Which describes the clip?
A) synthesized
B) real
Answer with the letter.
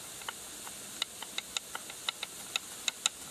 B